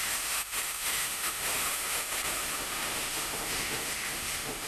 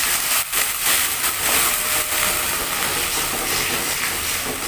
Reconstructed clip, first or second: first